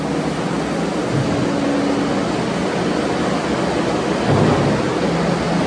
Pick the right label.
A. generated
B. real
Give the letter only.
B